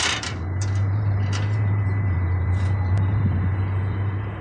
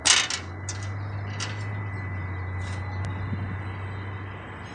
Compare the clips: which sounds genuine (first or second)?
second